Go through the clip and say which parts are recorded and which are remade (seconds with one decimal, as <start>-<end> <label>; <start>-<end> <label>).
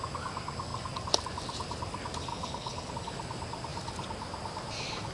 0.0-2.3 recorded; 2.3-2.9 remade; 2.9-5.1 recorded